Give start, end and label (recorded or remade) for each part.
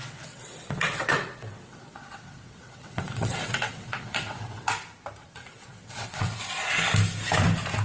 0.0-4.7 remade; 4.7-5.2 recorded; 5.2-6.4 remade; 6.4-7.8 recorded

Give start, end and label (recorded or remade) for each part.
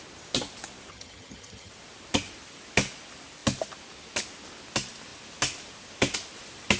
0.0-0.9 recorded; 0.9-1.7 remade; 1.7-6.8 recorded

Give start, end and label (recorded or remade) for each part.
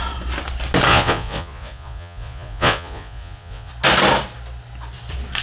0.0-0.9 recorded; 0.9-3.7 remade; 3.7-5.4 recorded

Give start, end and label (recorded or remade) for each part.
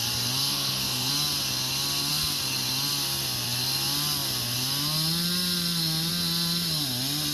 0.0-0.4 recorded; 0.4-1.1 remade; 1.1-7.3 recorded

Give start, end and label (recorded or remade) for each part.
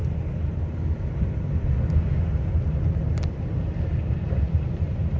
0.0-5.2 recorded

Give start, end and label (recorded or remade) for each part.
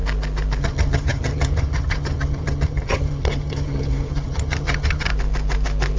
0.0-0.6 recorded; 0.6-5.1 remade; 5.1-6.0 recorded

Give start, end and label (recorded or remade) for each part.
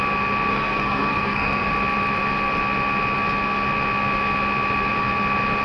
0.0-0.5 recorded; 0.5-1.7 remade; 1.7-5.6 recorded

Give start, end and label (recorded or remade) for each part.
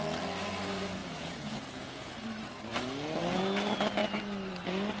0.0-1.0 recorded; 1.0-2.1 remade; 2.1-5.0 recorded